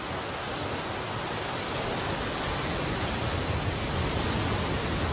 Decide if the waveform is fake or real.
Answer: real